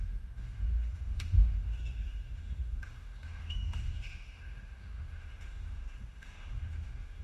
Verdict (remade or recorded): remade